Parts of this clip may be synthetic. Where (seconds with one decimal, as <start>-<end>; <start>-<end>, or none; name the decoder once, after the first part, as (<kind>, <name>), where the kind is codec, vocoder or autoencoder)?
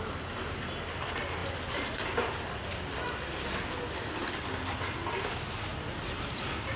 none